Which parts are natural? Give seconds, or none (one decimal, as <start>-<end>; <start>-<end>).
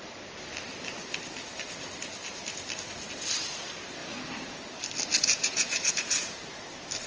0.0-4.0; 4.6-5.1; 6.4-7.1